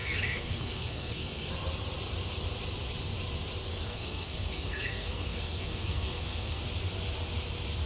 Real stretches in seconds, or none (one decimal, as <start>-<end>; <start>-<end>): 1.5-3.7; 6.6-7.9